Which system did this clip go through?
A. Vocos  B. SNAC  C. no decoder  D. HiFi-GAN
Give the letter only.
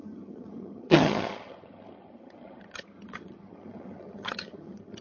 D